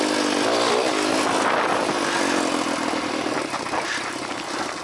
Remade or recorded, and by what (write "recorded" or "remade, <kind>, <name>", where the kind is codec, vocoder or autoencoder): recorded